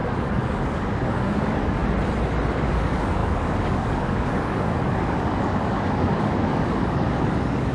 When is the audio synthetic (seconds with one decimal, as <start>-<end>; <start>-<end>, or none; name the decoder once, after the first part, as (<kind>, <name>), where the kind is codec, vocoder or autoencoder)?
0.0-1.8 (codec, DAC); 2.5-7.7